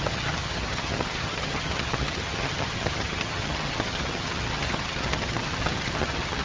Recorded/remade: remade